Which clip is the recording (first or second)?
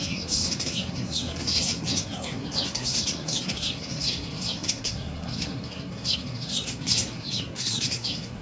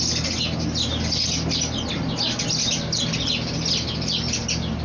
second